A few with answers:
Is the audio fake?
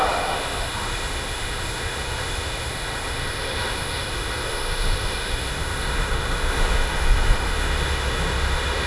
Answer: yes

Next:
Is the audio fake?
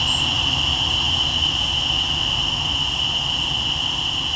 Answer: no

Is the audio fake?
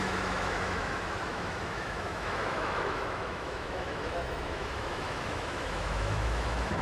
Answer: yes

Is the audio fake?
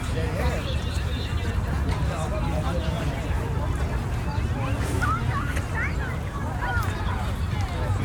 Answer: no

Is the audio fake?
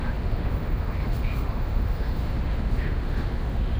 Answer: yes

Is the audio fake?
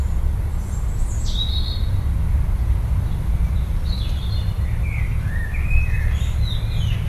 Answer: no